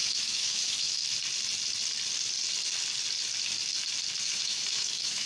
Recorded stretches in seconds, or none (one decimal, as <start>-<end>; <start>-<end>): 1.0-4.2